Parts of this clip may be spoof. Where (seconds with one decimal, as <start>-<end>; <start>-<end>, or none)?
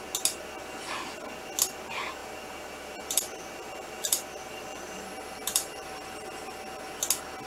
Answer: 2.2-6.6